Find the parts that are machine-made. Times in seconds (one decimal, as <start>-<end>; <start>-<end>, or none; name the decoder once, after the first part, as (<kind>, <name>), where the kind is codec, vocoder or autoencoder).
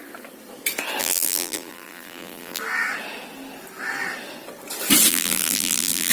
1.0-2.6 (vocoder, BigVGAN v2); 5.1-6.1